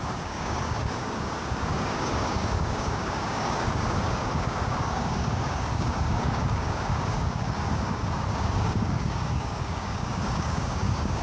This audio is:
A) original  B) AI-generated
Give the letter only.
B